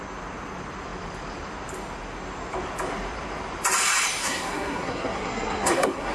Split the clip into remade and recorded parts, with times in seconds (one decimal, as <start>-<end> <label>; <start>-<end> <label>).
0.0-4.2 recorded; 4.2-6.1 remade